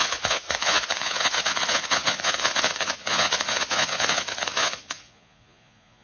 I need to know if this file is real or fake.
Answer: fake